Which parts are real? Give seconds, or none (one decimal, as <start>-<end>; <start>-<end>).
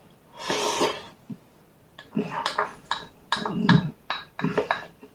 0.0-2.7